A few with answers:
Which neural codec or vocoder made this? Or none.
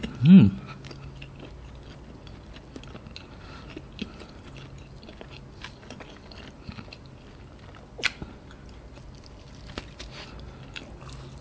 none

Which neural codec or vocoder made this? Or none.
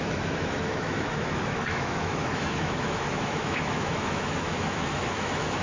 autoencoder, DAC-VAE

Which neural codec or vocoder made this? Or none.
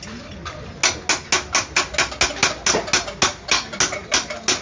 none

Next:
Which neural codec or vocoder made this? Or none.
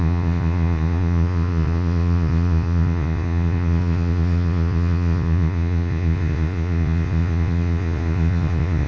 vocoder, Vocos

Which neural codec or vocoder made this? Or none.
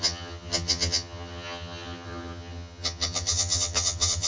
vocoder, HiFi-GAN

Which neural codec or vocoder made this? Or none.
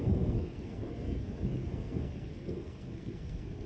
codec, SNAC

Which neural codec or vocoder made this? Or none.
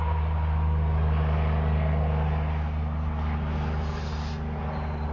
none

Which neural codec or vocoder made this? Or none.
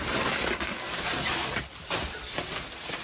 none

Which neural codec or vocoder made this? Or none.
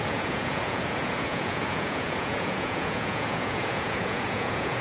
vocoder, Vocos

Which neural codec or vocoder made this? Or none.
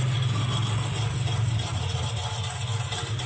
none